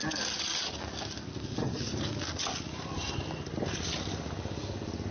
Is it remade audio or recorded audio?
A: recorded